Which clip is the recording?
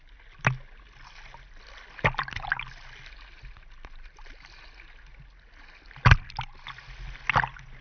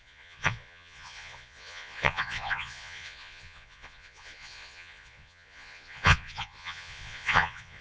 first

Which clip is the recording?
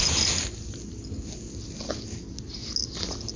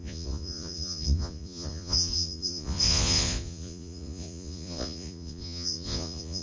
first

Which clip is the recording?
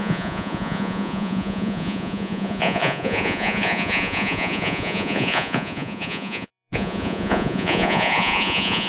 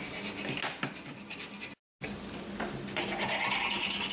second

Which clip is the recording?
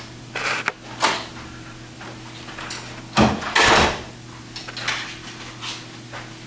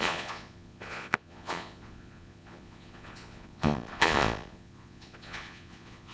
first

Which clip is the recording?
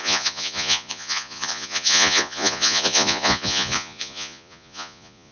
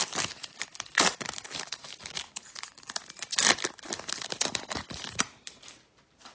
second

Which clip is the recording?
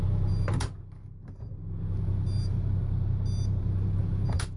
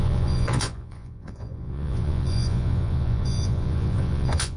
first